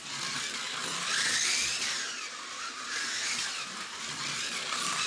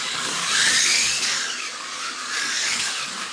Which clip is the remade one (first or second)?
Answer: second